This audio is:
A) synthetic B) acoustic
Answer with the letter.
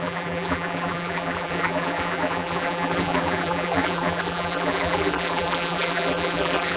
A